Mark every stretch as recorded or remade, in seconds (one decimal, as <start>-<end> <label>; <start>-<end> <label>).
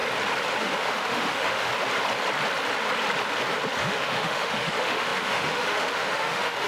0.0-0.6 recorded; 0.6-1.7 remade; 1.7-3.8 recorded; 3.8-6.7 remade